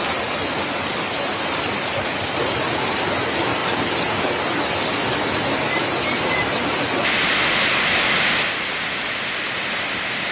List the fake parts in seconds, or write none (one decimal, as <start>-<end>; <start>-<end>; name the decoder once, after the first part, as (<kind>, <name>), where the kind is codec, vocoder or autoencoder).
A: none